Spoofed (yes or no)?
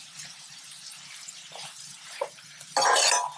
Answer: no